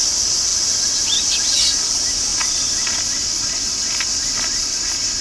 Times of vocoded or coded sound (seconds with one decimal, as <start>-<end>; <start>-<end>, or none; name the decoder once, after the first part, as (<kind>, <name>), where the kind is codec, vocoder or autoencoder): none